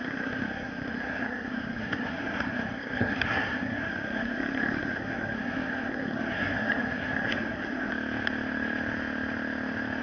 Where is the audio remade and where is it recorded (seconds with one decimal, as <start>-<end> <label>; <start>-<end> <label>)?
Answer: 0.0-7.9 remade; 7.9-10.0 recorded